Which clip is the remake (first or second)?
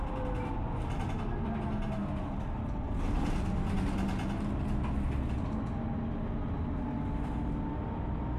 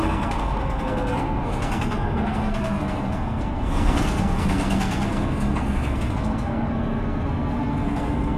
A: second